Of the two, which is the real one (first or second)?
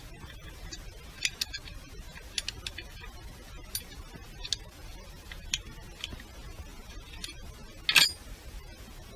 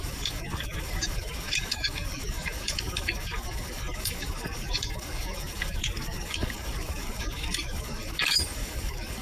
first